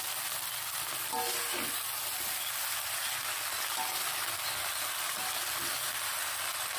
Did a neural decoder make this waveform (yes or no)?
no